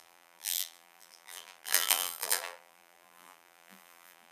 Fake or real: fake